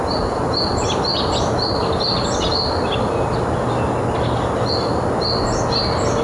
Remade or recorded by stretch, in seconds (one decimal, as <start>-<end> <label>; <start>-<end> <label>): 0.0-6.2 recorded